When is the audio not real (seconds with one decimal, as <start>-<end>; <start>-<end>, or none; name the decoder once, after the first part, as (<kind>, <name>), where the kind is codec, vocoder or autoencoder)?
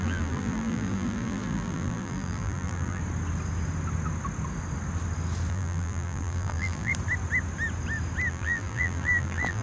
0.0-3.0 (vocoder, BigVGAN v2); 5.5-6.9; 8.3-9.6